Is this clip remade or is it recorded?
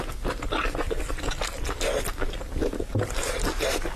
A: recorded